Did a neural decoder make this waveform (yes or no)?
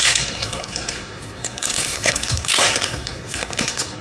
yes